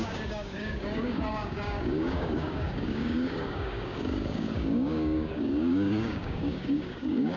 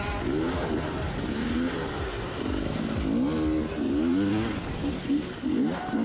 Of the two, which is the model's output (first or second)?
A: first